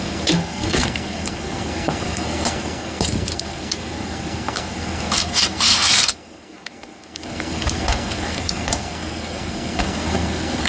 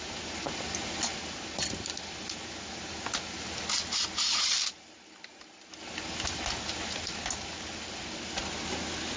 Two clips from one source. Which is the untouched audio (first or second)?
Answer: second